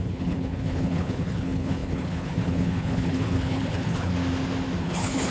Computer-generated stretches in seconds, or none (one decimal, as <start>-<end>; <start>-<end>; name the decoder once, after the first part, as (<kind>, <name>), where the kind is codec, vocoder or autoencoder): 0.0-4.1 (codec, HILCodec); 4.8-5.3